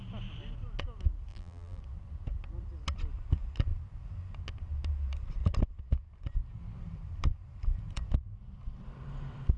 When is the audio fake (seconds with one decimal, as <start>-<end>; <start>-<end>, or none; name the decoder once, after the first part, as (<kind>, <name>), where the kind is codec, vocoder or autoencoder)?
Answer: 1.3-1.8 (vocoder, BigVGAN v2)